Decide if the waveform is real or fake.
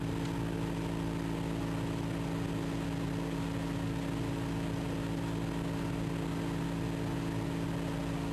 real